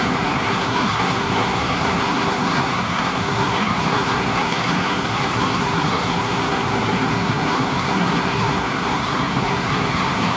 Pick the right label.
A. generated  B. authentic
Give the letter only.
A